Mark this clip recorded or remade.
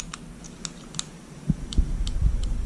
recorded